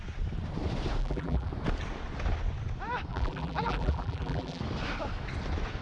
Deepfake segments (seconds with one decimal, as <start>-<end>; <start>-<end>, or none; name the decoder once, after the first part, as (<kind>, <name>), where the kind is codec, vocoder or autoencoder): 1.0-1.5 (vocoder, BigVGAN v2); 3.1-4.6